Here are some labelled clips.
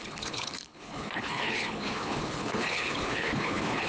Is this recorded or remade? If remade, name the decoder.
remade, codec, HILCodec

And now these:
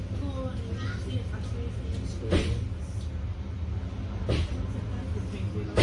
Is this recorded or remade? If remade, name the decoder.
recorded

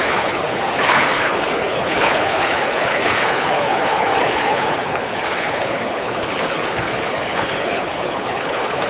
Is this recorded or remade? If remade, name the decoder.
remade, codec, HILCodec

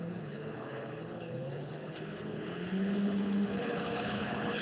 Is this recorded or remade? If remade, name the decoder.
remade, codec, HILCodec